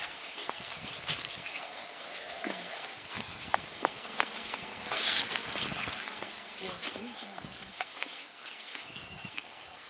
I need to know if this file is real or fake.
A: fake